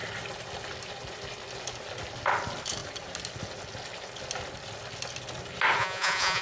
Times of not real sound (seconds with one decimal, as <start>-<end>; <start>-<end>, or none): 5.8-6.4